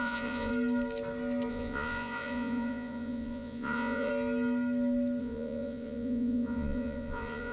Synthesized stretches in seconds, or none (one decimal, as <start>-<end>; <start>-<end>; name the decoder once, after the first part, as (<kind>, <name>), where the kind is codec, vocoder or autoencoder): 0.0-0.5 (vocoder, Vocos); 1.5-4.1; 5.2-7.5